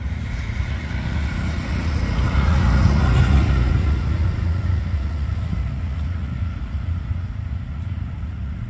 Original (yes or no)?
no